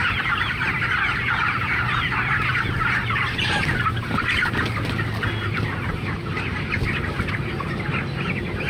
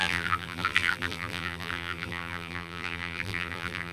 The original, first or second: first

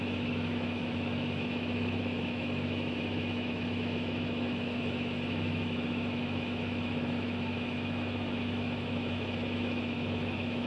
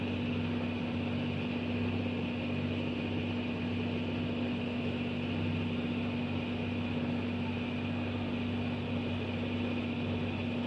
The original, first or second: second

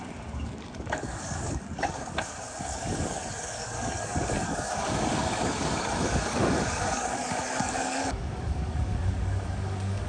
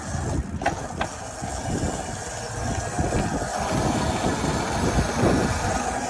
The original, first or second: second